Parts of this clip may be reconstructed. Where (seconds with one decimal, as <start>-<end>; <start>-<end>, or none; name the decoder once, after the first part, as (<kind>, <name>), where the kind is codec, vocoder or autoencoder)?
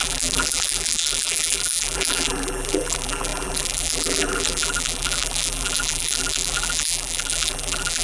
0.0-8.0 (vocoder, BigVGAN v2)